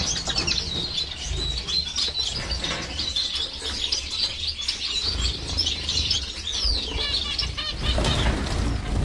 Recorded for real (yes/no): yes